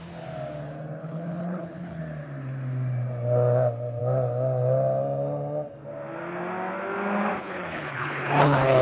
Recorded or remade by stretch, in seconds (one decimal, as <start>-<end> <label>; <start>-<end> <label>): 0.0-1.0 recorded; 1.0-2.0 remade; 2.0-7.4 recorded; 7.4-8.8 remade